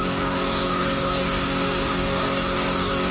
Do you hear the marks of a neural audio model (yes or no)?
yes